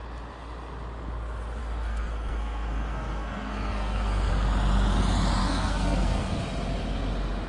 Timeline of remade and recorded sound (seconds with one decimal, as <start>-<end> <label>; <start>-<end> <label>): 0.0-1.6 recorded; 1.6-4.3 remade; 4.3-5.4 recorded; 5.4-6.4 remade; 6.4-7.5 recorded

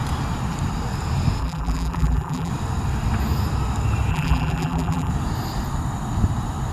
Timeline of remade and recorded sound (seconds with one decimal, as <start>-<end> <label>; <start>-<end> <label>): 0.0-1.4 recorded; 1.4-2.5 remade; 2.5-4.1 recorded; 4.1-5.1 remade; 5.1-6.7 recorded